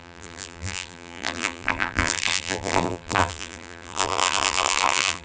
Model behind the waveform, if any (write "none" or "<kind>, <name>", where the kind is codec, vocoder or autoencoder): vocoder, BigVGAN v2